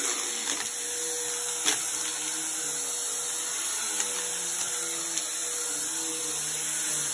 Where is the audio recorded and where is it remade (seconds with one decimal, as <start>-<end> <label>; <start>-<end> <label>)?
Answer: 0.0-7.1 recorded